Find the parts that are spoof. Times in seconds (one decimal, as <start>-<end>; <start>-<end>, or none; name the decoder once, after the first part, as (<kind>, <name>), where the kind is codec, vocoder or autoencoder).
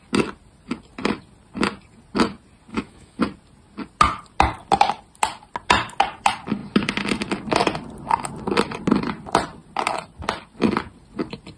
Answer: 2.7-3.2 (autoencoder, DAC-VAE)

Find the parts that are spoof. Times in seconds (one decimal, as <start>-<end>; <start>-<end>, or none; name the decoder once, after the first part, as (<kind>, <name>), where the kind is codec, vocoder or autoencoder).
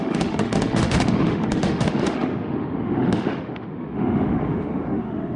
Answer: 0.0-5.4 (autoencoder, DAC-VAE)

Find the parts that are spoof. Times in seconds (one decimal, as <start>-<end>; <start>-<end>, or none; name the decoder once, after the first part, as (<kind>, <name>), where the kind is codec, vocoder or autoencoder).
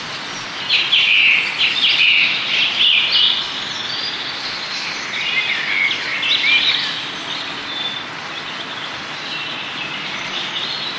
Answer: none